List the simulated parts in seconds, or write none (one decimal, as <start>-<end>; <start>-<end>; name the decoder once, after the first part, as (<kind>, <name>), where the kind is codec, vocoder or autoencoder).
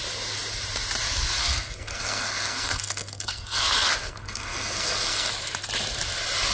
1.4-5.3 (codec, SNAC)